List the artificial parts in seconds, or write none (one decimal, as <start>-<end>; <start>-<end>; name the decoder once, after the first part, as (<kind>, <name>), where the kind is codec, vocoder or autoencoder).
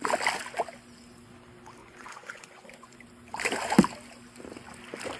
1.8-3.0 (vocoder, Vocos)